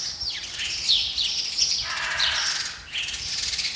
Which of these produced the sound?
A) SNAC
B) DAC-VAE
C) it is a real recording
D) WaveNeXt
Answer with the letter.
C